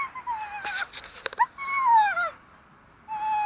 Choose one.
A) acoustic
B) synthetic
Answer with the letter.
A